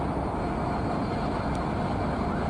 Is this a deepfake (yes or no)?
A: no